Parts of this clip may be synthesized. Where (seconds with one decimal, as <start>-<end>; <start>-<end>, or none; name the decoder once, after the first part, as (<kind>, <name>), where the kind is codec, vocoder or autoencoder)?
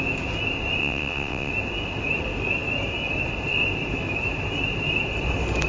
0.8-1.5 (vocoder, WaveNeXt)